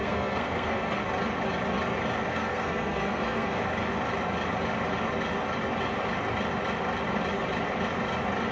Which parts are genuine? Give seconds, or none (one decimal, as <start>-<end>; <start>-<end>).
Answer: 1.0-2.3; 3.6-8.5